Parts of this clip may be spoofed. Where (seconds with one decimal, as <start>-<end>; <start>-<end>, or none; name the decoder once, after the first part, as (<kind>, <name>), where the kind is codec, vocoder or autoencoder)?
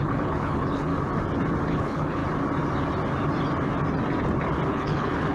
0.0-0.9 (codec, HILCodec); 1.7-2.2; 4.7-5.3